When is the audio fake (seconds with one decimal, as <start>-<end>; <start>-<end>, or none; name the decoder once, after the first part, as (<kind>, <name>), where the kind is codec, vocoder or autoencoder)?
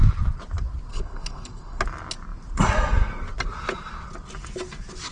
0.9-1.8 (codec, SNAC)